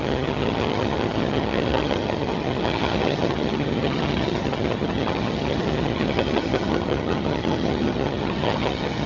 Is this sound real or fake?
fake